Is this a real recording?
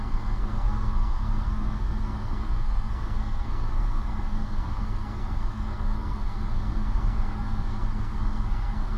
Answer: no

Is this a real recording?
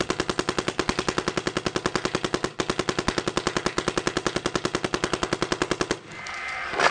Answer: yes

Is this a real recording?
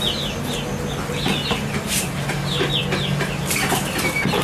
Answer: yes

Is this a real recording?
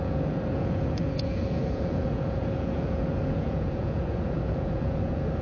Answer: no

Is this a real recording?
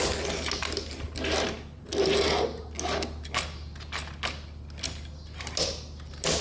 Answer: yes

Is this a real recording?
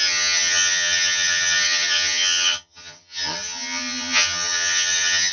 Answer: no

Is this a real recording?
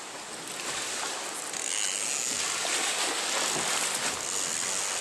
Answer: yes